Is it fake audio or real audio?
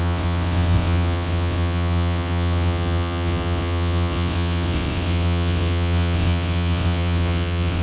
fake